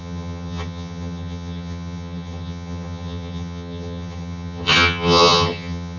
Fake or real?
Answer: fake